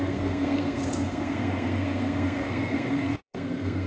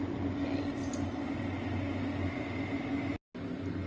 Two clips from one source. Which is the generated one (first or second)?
first